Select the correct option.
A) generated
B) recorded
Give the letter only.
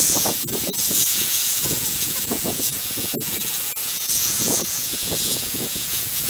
A